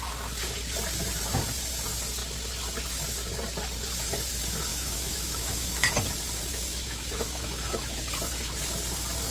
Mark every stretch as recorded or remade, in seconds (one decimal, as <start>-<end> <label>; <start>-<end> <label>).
0.0-4.7 recorded; 4.7-5.9 remade; 5.9-6.5 recorded; 6.5-8.0 remade; 8.0-9.3 recorded